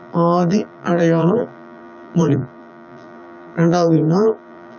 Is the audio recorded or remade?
remade